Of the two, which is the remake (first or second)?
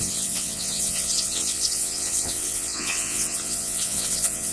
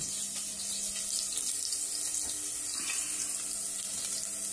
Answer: first